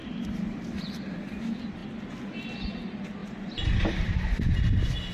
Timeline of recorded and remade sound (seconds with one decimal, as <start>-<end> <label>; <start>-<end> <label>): 0.0-1.0 remade; 1.0-3.2 recorded; 3.2-4.3 remade; 4.3-5.1 recorded